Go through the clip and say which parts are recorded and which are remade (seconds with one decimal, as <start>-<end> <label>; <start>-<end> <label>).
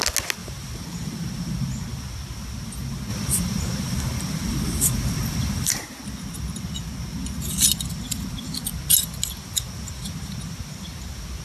0.0-0.4 recorded; 0.4-1.6 remade; 1.6-3.1 recorded; 3.1-5.7 remade; 5.7-11.4 recorded